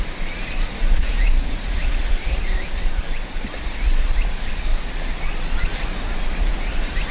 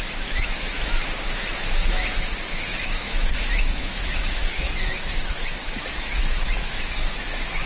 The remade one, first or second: second